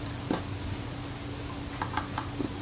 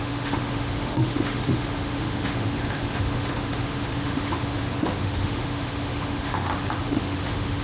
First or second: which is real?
first